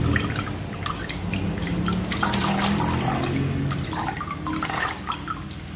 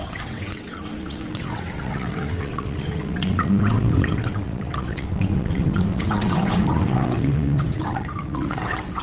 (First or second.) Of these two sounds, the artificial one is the second